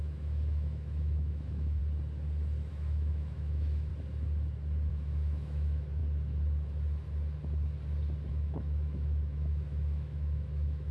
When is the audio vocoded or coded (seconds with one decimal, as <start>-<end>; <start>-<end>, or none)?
0.0-1.8; 2.7-3.9; 4.9-6.0; 8.3-10.9